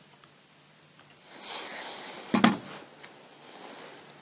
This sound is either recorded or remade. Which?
recorded